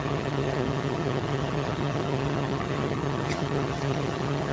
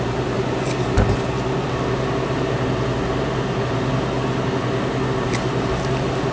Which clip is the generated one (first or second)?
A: first